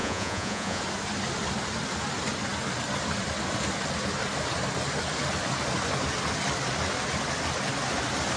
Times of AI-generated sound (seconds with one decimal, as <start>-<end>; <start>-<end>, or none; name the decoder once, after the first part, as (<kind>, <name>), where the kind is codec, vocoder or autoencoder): 0.0-0.8 (vocoder, Vocos)